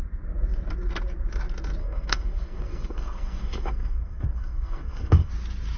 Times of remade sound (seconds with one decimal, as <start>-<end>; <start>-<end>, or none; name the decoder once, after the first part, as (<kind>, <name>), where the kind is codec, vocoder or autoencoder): 1.8-5.3 (codec, SNAC)